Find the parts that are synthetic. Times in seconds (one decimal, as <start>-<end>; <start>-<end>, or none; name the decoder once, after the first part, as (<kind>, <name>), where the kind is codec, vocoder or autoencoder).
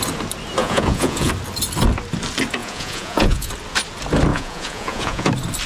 0.6-1.3 (vocoder, Vocos); 2.6-3.5; 4.3-5.3